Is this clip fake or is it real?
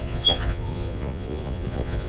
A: fake